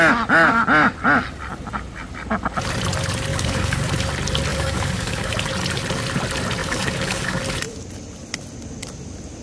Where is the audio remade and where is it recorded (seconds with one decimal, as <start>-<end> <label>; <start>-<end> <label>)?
0.0-3.3 recorded; 3.3-3.9 remade; 3.9-4.5 recorded; 4.5-5.3 remade; 5.3-6.6 recorded; 6.6-7.4 remade; 7.4-9.4 recorded